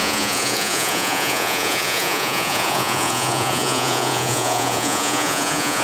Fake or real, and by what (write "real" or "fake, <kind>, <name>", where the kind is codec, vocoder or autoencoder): fake, vocoder, Vocos